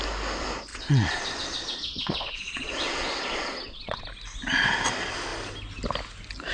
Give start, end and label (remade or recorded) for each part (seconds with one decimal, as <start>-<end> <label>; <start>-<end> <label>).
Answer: 0.0-0.7 recorded; 0.7-4.0 remade; 4.0-6.5 recorded